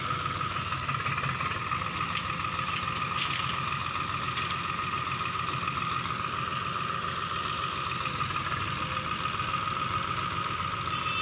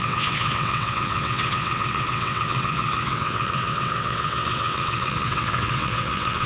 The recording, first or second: first